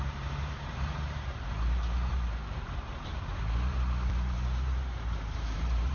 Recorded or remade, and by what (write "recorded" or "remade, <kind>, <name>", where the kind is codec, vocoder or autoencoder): remade, vocoder, BigVGAN v2